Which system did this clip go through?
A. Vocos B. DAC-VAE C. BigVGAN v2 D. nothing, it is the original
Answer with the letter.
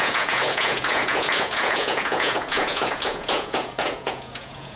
A